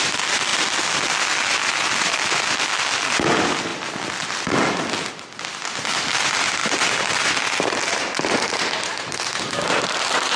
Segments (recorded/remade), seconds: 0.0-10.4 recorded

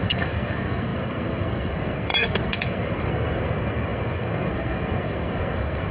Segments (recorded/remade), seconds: 0.0-5.9 remade